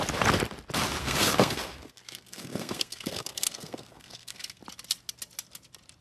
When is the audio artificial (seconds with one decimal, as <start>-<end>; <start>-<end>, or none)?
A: 1.0-4.6